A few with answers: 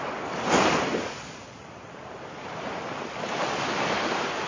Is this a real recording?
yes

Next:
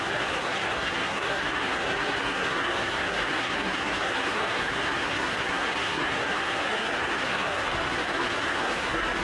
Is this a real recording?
no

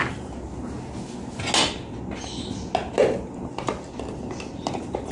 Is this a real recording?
yes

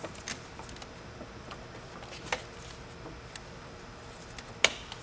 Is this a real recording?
yes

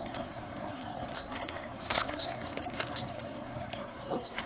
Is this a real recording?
no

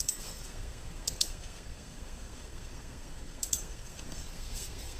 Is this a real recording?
no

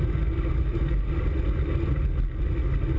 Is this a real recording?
yes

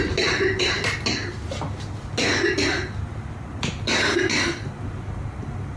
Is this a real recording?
yes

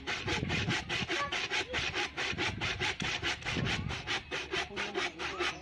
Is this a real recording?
yes